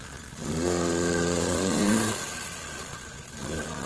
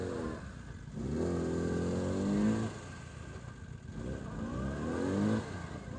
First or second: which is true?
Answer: second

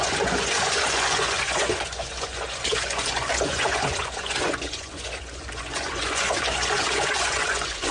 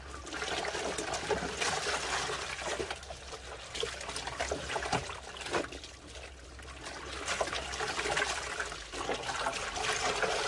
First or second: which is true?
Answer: second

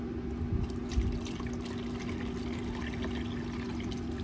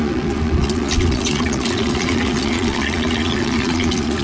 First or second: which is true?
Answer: first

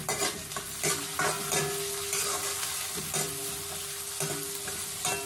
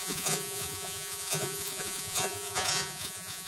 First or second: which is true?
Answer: first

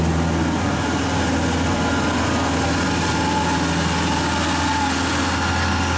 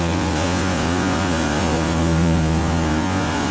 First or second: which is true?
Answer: first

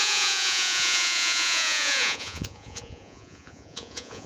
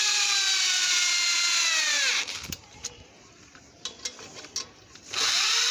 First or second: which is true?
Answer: second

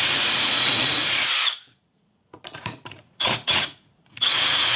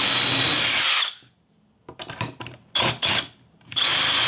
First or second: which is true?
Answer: second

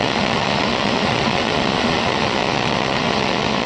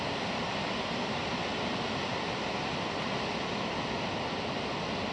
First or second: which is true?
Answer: second